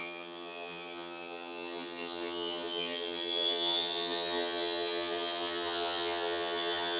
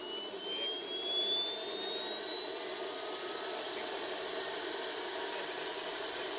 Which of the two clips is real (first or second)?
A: second